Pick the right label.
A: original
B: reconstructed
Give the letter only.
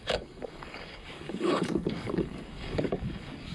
B